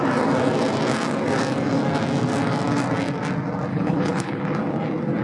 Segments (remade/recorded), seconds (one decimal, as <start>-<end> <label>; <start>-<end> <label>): 0.0-3.7 recorded; 3.7-4.4 remade; 4.4-5.2 recorded